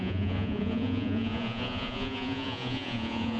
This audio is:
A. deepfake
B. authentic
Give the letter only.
A